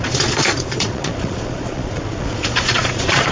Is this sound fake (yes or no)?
yes